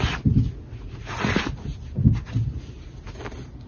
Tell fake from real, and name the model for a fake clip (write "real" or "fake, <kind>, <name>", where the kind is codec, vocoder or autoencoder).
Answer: real